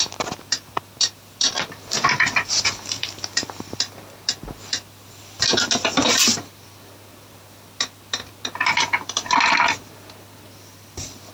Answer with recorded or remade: recorded